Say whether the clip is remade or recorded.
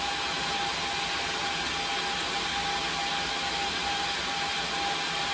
recorded